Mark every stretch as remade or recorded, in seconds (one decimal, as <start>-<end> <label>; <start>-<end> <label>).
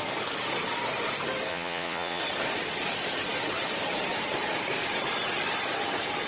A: 0.0-1.5 recorded; 1.5-2.2 remade; 2.2-6.3 recorded